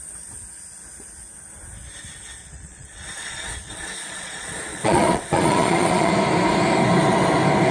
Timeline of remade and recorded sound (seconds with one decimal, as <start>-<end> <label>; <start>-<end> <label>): 0.0-2.4 recorded; 2.4-6.1 remade; 6.1-7.7 recorded